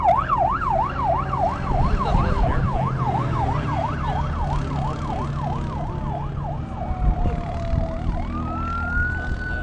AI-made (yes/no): no